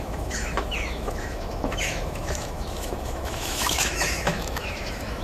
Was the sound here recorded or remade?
remade